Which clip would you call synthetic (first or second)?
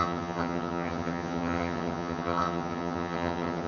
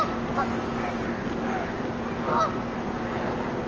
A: first